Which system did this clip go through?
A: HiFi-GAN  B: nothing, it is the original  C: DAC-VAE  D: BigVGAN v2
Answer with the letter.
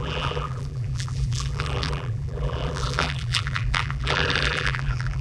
D